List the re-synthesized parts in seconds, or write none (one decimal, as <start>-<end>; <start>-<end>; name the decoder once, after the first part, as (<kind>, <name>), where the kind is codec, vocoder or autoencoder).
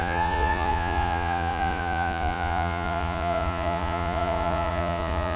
0.0-5.4 (vocoder, Vocos)